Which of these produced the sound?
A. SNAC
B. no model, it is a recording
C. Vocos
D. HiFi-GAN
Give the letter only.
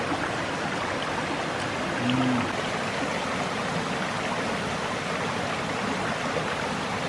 B